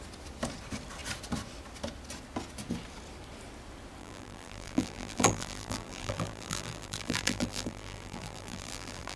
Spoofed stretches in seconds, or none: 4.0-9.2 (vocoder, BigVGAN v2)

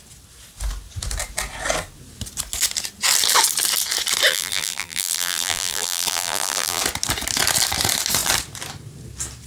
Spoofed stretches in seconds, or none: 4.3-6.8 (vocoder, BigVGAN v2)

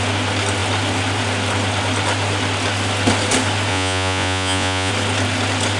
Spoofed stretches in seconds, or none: 3.7-4.9 (vocoder, Vocos)

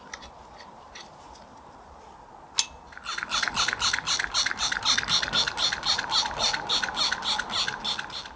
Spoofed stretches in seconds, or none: 3.1-7.2 (vocoder, BigVGAN v2)

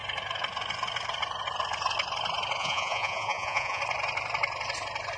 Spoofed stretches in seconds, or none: 2.6-3.8 (vocoder, Vocos)

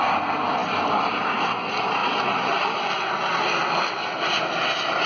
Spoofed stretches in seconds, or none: none